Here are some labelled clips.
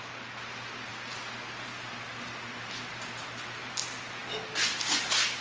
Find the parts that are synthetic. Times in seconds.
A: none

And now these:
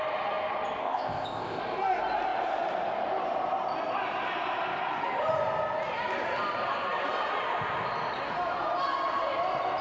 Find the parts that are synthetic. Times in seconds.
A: 0.8-1.6 (codec, ZipCodec)